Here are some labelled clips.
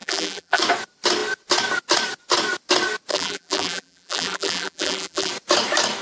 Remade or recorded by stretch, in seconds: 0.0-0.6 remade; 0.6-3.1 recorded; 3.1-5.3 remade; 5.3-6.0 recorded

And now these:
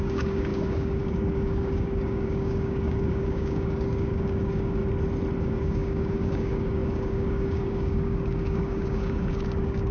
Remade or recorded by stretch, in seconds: 0.0-4.8 remade; 4.8-5.4 recorded; 5.4-9.9 remade

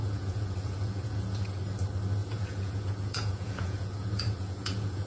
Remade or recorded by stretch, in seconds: 0.0-1.6 remade; 1.6-2.2 recorded; 2.2-5.1 remade

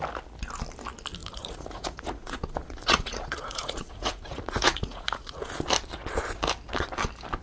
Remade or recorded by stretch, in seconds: 0.0-1.2 recorded; 1.2-5.4 remade; 5.4-7.4 recorded

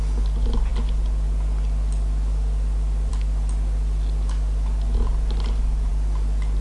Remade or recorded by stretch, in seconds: 0.0-6.6 recorded